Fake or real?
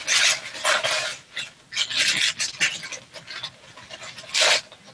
real